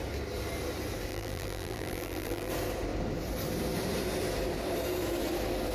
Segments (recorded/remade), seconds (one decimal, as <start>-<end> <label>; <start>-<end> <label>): 0.0-1.1 recorded; 1.1-2.5 remade; 2.5-5.7 recorded